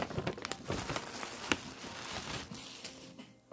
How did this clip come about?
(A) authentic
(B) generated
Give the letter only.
A